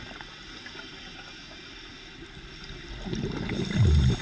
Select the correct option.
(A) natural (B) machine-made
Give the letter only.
A